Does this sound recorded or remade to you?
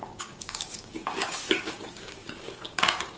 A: remade